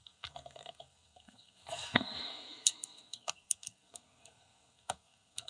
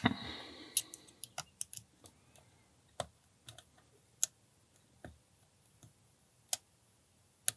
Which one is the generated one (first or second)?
first